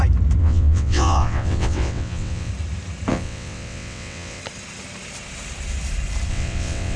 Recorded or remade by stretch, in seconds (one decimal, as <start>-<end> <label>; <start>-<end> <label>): 0.0-0.4 recorded; 0.4-2.5 remade; 2.5-3.1 recorded; 3.1-4.4 remade; 4.4-6.3 recorded; 6.3-7.0 remade

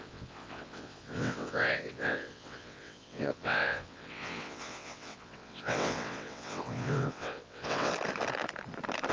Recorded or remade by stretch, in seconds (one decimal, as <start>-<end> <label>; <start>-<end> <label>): 0.0-7.9 remade; 7.9-9.1 recorded

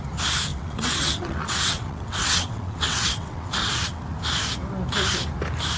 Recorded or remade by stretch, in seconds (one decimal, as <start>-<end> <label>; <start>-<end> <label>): 0.0-0.5 recorded; 0.5-4.0 remade; 4.0-5.8 recorded

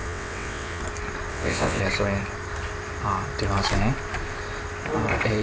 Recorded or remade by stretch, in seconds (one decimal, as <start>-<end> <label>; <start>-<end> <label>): 0.0-0.8 remade; 0.8-1.3 recorded; 1.3-1.8 remade; 1.8-5.4 recorded

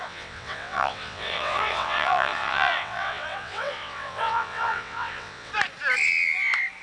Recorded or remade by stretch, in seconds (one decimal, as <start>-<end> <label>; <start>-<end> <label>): 0.0-5.5 remade; 5.5-6.8 recorded